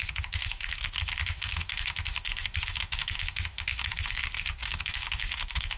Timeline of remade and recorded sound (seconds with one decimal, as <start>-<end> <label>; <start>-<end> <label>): 0.0-5.8 remade